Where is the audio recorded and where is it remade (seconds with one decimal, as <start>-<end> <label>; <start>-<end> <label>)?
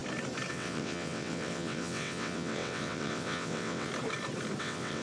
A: 0.0-0.5 recorded; 0.5-3.9 remade; 3.9-4.6 recorded; 4.6-5.0 remade